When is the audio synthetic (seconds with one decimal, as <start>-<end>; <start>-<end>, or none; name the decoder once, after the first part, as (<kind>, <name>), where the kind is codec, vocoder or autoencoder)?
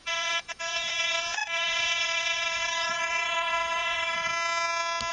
0.0-4.3 (vocoder, Vocos)